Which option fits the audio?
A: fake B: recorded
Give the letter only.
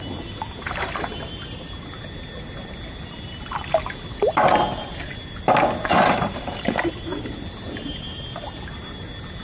B